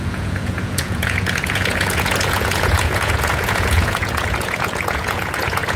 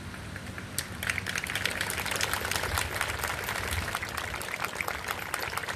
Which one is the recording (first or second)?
second